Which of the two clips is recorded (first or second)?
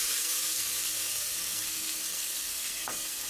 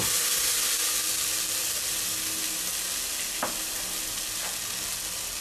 second